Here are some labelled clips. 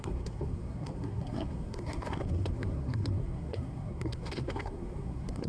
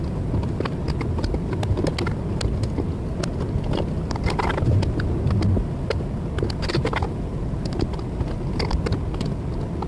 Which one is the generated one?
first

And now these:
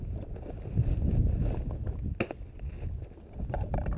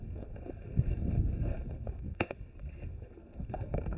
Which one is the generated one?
second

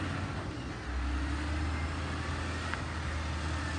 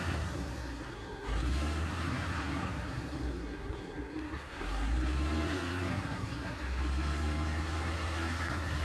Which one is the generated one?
second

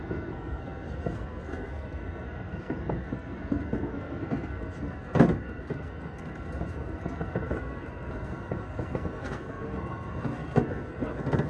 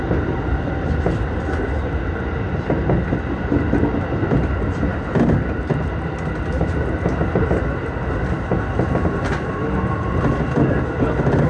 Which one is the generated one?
first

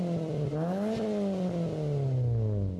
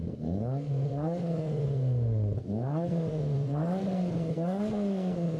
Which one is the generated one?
second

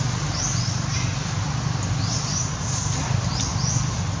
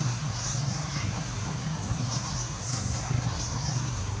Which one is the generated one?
second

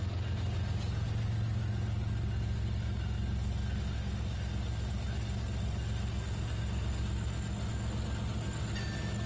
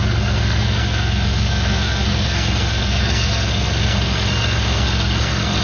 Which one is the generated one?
second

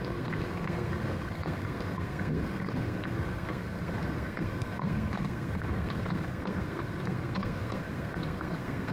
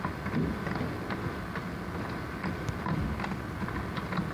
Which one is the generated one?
first